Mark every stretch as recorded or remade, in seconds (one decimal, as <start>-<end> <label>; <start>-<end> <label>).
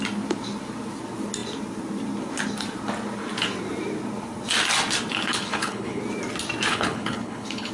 0.0-5.1 recorded; 5.1-6.0 remade; 6.0-6.7 recorded; 6.7-7.7 remade